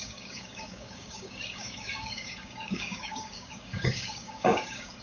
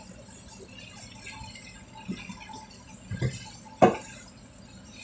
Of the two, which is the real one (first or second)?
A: second